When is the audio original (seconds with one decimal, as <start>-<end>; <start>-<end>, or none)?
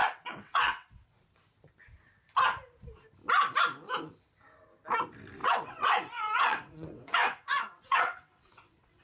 1.1-5.4